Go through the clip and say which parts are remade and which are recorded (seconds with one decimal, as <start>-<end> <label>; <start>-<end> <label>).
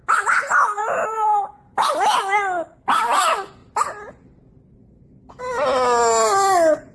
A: 0.0-0.8 recorded; 0.8-1.4 remade; 1.4-6.9 recorded